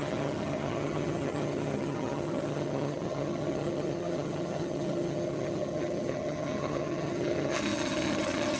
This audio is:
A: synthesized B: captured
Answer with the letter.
A